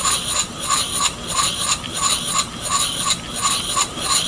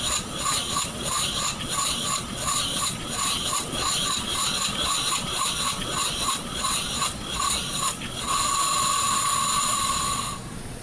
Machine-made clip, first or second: second